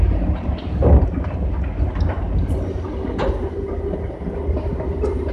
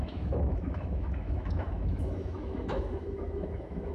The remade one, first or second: second